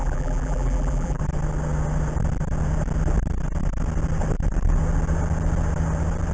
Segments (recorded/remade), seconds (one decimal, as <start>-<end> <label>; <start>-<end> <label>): 0.0-1.2 remade; 1.2-6.3 recorded